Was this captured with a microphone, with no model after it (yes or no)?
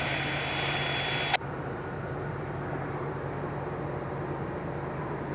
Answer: yes